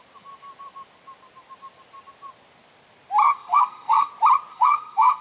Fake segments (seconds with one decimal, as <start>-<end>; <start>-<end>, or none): 3.2-4.1; 4.5-5.2